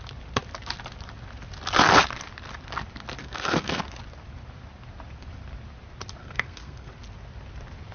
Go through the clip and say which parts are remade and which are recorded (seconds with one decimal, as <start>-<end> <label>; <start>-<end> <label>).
0.0-3.2 recorded; 3.2-3.8 remade; 3.8-6.2 recorded; 6.2-6.9 remade; 6.9-7.9 recorded